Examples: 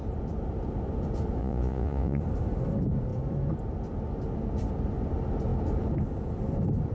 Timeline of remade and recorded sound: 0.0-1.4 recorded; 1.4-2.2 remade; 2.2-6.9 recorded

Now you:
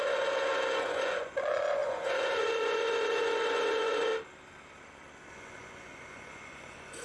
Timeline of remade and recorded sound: 0.0-4.1 remade; 4.1-5.3 recorded; 5.3-7.0 remade

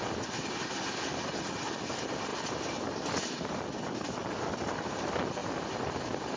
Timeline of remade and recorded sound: 0.0-6.4 recorded